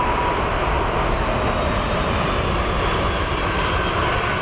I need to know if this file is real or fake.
real